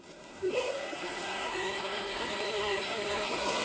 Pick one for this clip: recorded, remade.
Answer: remade